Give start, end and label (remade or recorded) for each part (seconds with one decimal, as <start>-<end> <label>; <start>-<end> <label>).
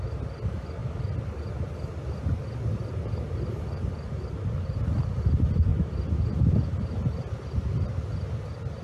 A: 0.0-8.8 recorded